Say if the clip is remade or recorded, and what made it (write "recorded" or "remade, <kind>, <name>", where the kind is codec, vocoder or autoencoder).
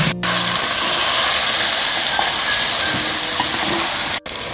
recorded